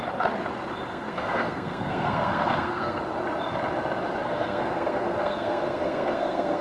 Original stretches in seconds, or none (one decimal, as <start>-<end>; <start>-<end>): 0.0-0.9; 3.0-4.2